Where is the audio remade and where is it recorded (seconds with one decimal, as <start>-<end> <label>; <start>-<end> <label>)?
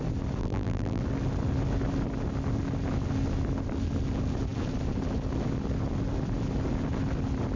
0.0-0.4 recorded; 0.4-1.0 remade; 1.0-7.6 recorded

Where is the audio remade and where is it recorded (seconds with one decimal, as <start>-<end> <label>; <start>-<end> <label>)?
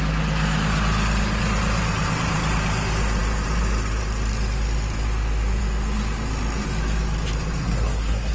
0.0-7.6 recorded; 7.6-8.3 remade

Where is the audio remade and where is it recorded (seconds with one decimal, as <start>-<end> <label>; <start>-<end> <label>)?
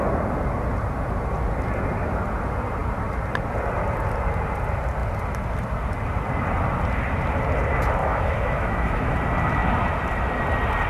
0.0-8.0 recorded; 8.0-9.1 remade; 9.1-10.9 recorded